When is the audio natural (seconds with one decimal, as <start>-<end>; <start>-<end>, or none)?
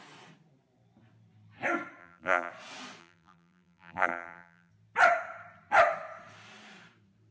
0.0-2.0; 2.5-3.0; 4.7-7.3